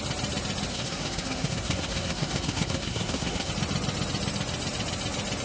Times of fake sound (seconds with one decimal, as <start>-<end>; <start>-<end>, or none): 0.7-3.5